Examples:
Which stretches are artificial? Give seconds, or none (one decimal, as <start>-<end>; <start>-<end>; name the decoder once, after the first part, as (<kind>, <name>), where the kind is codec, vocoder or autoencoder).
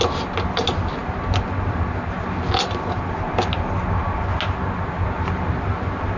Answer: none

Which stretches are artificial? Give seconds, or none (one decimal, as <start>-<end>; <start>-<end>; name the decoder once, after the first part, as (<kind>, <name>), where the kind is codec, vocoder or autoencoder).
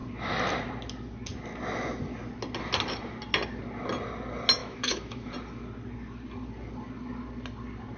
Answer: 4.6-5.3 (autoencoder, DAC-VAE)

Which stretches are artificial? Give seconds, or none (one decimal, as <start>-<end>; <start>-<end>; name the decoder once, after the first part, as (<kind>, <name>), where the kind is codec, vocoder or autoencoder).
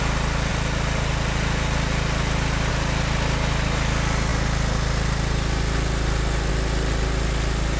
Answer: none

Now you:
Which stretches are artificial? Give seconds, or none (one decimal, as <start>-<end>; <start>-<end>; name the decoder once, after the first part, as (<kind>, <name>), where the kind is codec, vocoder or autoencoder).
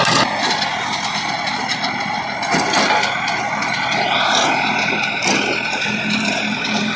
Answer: none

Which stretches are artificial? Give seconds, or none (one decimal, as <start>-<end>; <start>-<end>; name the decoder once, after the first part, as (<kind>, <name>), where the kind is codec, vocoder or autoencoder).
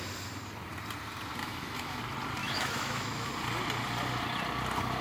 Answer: 1.4-2.0 (autoencoder, DAC-VAE); 2.4-3.3